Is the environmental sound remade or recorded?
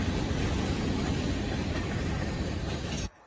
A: recorded